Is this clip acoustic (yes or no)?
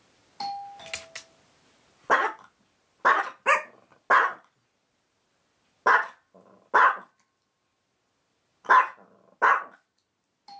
yes